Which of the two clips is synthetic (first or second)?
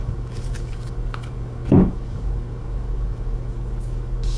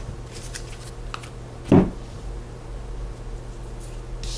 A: first